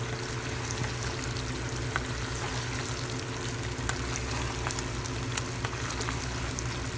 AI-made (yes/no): no